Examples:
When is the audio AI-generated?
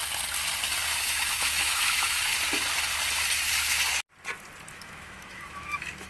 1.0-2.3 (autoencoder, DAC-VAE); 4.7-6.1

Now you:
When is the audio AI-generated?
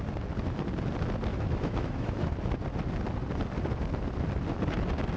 1.3-2.3 (autoencoder, DAC-VAE)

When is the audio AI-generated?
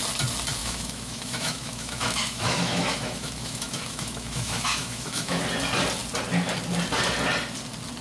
0.6-5.4 (autoencoder, DAC-VAE)